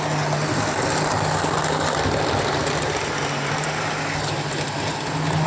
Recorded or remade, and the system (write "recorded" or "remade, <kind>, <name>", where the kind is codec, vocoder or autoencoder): recorded